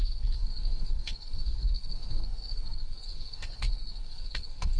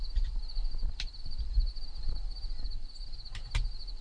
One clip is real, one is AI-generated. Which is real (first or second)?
second